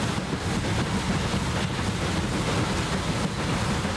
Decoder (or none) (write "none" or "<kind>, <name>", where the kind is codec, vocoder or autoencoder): none